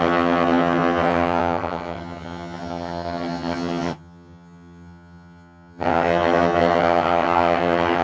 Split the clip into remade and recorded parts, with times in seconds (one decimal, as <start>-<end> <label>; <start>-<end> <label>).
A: 0.0-8.0 remade